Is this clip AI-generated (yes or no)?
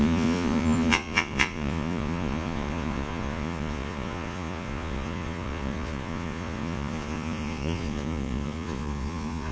yes